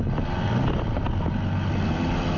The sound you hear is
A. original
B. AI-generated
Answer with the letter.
A